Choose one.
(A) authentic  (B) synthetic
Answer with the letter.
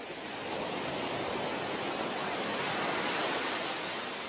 A